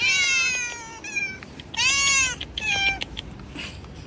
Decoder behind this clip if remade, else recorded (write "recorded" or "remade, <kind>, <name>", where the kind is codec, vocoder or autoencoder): recorded